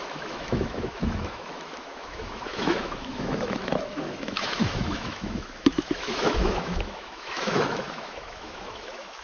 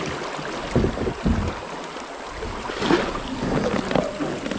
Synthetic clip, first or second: first